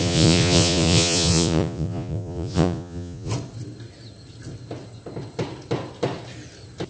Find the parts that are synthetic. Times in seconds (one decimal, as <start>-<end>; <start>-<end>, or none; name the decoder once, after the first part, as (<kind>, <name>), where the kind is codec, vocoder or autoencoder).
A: 0.0-3.3 (vocoder, Vocos)